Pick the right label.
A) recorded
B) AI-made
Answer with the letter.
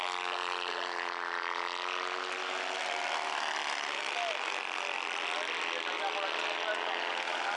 A